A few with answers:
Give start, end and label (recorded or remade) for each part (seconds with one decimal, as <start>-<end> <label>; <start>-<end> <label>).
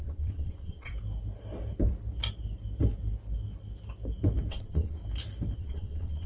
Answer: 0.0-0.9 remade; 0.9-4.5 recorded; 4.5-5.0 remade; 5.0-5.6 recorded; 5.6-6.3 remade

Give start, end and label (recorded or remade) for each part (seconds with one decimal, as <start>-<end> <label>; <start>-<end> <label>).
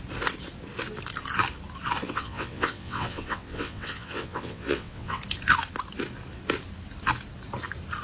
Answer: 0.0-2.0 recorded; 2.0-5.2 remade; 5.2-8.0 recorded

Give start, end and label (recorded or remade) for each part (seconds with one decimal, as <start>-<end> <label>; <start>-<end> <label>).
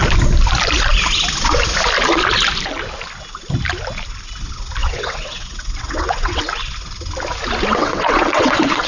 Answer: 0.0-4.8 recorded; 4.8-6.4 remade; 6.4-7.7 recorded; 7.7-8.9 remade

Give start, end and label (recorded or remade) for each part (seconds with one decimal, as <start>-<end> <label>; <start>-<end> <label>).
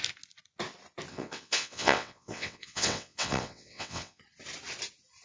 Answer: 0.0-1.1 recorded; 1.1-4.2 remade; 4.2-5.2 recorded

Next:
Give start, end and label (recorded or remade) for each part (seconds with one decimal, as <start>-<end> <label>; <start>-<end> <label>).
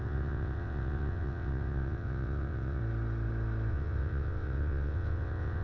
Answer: 0.0-2.8 remade; 2.8-3.7 recorded; 3.7-5.6 remade